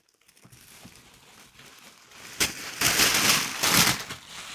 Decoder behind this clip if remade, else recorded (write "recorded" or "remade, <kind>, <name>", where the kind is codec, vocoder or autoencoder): recorded